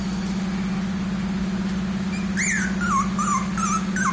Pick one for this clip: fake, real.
real